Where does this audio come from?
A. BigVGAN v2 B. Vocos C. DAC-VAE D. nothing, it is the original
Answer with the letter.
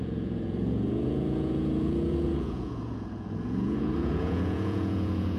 B